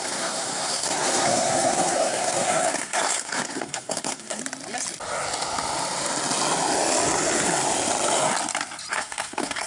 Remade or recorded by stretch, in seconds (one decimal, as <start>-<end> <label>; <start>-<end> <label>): 0.0-4.4 remade; 4.4-8.9 recorded; 8.9-9.7 remade